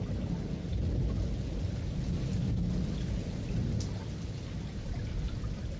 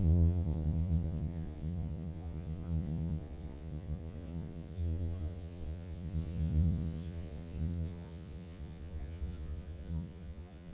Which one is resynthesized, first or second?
second